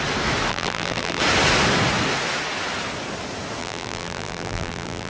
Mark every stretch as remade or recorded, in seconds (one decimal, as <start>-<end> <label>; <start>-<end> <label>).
0.0-0.5 recorded; 0.5-1.2 remade; 1.2-3.6 recorded; 3.6-5.1 remade